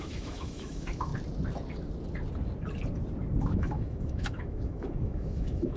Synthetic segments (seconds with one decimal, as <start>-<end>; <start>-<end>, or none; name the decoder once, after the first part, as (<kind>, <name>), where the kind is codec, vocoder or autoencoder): 0.0-1.1 (autoencoder, DAC-VAE); 3.4-5.8